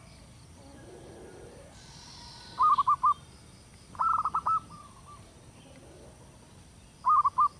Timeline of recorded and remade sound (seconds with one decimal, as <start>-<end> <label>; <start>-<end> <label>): 0.0-7.6 recorded